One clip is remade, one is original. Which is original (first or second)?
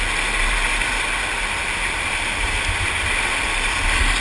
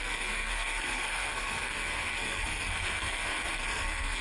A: first